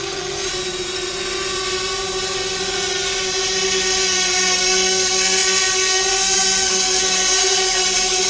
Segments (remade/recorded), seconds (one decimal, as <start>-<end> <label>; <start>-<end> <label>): 0.0-0.5 remade; 0.5-4.6 recorded; 4.6-8.3 remade